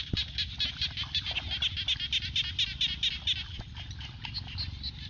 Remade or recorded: recorded